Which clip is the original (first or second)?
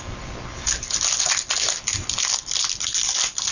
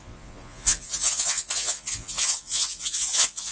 first